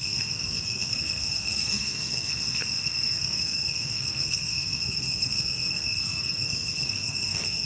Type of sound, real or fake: fake